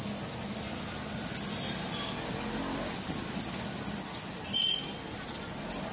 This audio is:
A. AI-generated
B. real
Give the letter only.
B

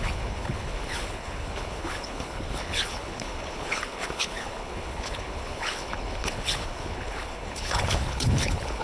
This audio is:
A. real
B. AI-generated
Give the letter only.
B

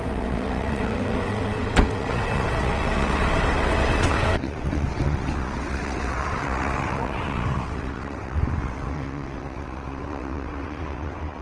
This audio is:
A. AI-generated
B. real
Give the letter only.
A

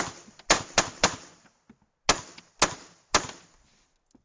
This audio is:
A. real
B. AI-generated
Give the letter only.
A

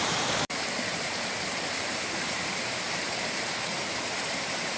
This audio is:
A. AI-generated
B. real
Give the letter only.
A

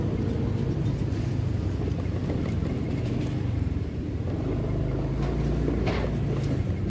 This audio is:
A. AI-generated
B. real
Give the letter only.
B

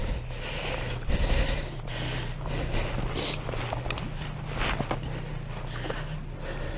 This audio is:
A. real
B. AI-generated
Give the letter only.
A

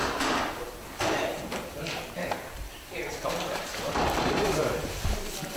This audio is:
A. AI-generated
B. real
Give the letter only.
A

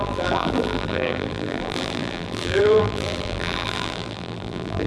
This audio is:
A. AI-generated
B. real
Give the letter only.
A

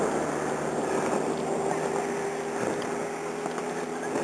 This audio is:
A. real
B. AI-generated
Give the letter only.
A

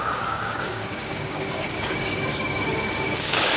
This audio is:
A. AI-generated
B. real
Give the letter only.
A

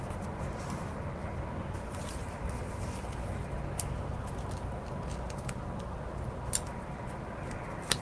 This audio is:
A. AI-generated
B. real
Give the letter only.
B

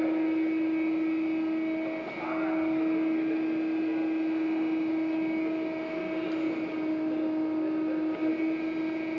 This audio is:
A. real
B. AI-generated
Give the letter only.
A